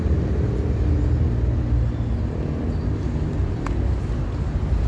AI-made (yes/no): no